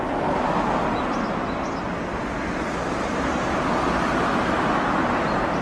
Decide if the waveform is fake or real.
real